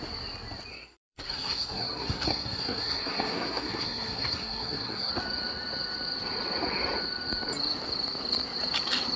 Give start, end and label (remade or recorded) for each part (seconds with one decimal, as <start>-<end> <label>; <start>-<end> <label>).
0.0-0.7 recorded; 0.7-5.1 remade; 5.1-9.2 recorded